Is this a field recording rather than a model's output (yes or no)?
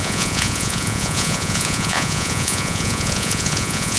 no